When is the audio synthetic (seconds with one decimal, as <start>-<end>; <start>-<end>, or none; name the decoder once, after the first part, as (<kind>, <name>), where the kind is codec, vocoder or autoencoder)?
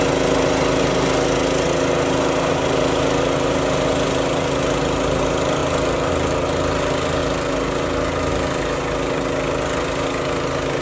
none